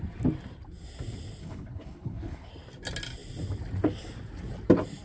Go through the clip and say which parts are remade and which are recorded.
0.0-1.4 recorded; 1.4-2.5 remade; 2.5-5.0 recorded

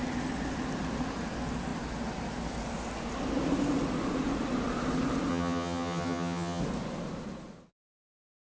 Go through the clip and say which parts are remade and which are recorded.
0.0-5.3 recorded; 5.3-6.6 remade; 6.6-8.6 recorded

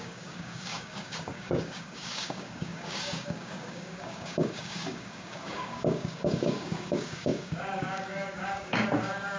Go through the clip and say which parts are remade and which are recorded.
0.0-9.4 remade

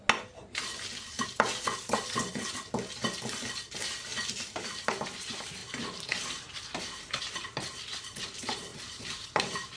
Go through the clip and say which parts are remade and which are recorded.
0.0-8.7 recorded; 8.7-9.8 remade

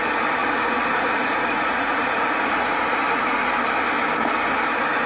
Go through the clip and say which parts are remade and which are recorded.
0.0-0.4 recorded; 0.4-3.5 remade; 3.5-5.1 recorded